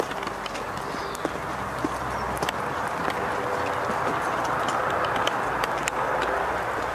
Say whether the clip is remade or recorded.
recorded